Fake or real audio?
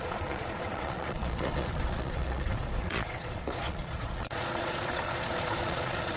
fake